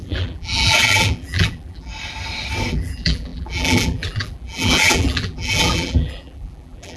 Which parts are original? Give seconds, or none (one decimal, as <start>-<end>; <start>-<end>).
1.9-2.7